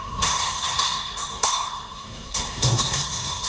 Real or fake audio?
fake